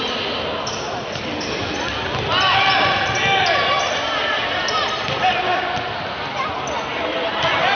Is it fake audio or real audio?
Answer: real